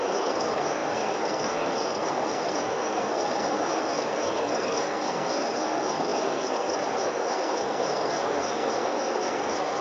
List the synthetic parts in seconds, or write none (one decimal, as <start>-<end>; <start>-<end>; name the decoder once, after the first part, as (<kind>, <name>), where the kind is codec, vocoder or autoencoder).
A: 0.0-9.8 (codec, SNAC)